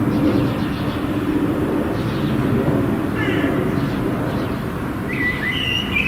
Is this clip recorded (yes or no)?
yes